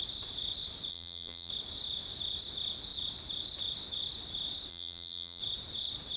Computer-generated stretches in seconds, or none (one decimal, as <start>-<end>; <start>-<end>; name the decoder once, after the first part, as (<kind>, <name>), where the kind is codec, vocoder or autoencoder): 0.9-1.5 (vocoder, BigVGAN v2); 4.7-5.4